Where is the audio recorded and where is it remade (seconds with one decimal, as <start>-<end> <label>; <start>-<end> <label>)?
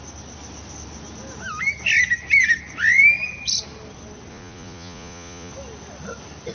0.0-4.3 recorded; 4.3-5.5 remade; 5.5-6.5 recorded